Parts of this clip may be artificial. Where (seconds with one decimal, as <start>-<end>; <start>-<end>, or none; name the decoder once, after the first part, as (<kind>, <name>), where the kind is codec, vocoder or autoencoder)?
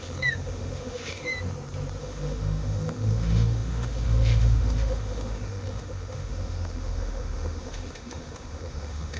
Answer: 0.0-1.3 (autoencoder, DAC-VAE); 2.0-9.2